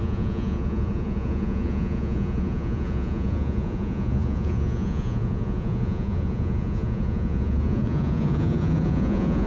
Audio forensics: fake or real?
fake